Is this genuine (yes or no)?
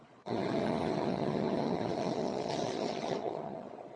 no